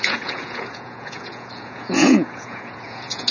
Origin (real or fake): fake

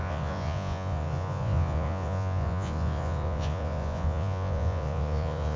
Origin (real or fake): fake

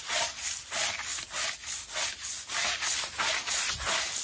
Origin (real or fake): real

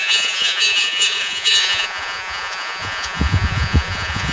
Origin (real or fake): fake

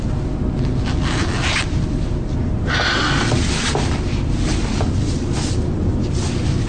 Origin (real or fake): real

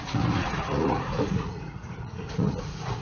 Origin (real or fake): fake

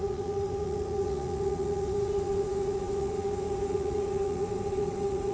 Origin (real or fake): fake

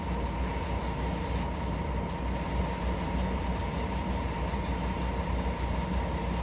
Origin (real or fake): real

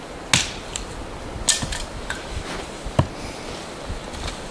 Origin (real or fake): real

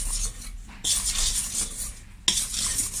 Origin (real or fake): real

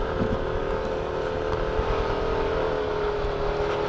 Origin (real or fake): real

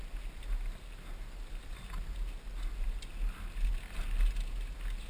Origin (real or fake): real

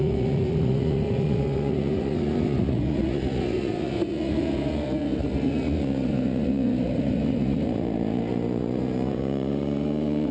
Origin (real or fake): fake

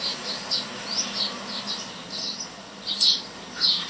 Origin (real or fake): real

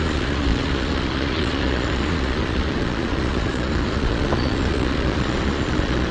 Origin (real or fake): fake